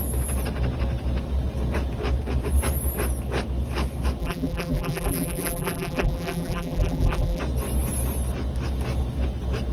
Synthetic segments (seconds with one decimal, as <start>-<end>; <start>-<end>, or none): 4.2-7.4